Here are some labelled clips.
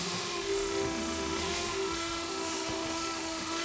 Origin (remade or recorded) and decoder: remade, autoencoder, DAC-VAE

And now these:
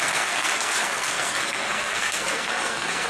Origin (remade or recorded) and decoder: remade, codec, SNAC